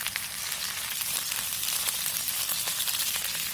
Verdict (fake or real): real